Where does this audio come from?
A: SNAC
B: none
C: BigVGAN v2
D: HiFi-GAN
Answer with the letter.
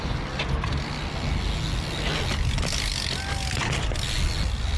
B